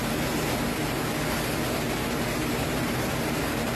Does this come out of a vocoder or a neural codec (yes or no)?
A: no